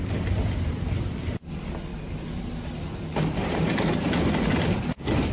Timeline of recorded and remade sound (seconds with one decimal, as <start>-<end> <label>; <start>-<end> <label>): 0.0-5.3 recorded